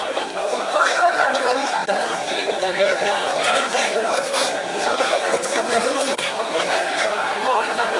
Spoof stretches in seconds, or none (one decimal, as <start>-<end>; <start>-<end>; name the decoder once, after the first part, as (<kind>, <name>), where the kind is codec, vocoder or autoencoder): 0.0-8.0 (codec, SNAC)